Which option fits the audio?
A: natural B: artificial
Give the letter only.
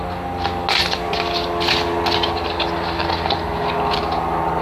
A